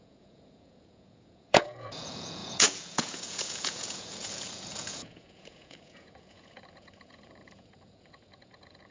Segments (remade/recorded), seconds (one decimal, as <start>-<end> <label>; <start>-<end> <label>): 0.0-8.9 remade